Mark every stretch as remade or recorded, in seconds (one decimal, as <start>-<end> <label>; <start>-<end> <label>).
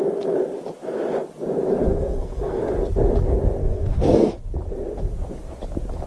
0.0-1.9 recorded; 1.9-2.6 remade; 2.6-3.6 recorded; 3.6-4.3 remade; 4.3-6.1 recorded